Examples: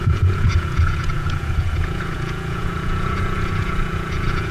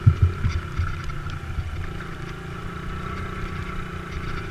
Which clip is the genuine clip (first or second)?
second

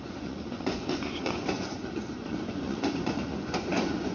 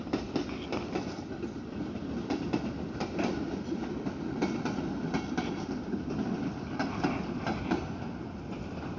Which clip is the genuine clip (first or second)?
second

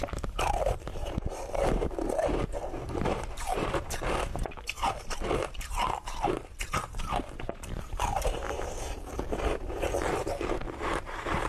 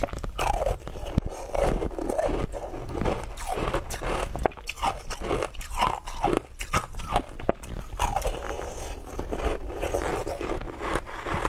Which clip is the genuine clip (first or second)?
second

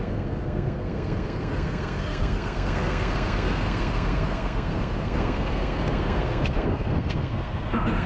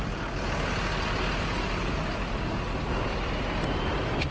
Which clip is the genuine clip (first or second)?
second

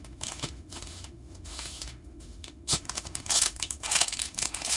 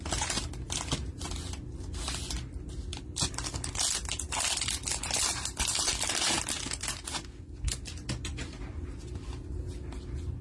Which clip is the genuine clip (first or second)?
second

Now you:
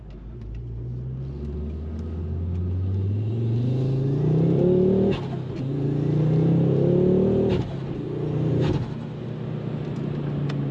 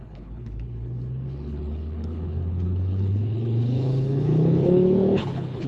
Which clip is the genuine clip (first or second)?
first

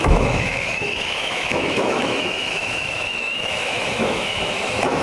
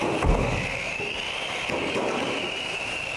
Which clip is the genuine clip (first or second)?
second